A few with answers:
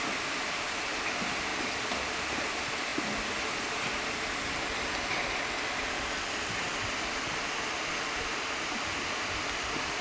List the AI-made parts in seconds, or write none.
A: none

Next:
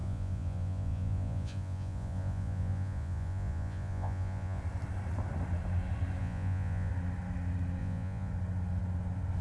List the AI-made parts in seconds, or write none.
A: 0.0-4.6 (vocoder, Vocos); 6.2-6.9; 7.8-8.3

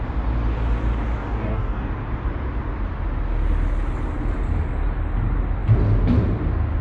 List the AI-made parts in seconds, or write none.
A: 1.2-1.9 (codec, DAC)

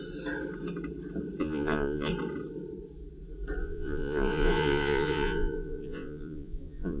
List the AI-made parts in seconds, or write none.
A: 1.4-2.1 (vocoder, Vocos); 3.6-7.0

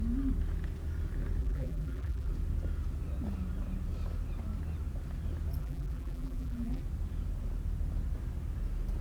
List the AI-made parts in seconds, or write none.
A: 1.4-2.3 (vocoder, BigVGAN v2); 5.6-6.8

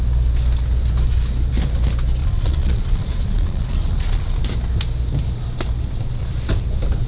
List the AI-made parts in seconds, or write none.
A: 2.2-4.4 (vocoder, Vocos)

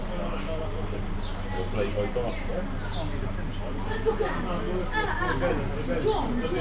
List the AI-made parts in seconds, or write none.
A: none